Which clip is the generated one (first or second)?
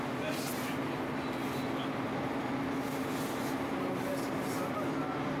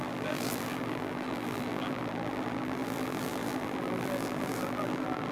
second